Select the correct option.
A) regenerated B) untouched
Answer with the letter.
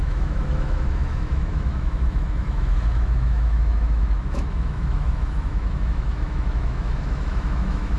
A